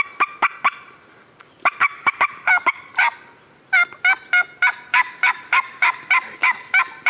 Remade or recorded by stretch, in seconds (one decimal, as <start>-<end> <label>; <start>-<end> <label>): 0.0-1.8 recorded; 1.8-2.8 remade; 2.8-4.9 recorded; 4.9-6.1 remade; 6.1-7.1 recorded